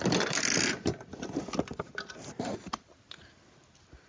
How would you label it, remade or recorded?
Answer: recorded